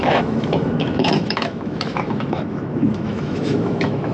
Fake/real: fake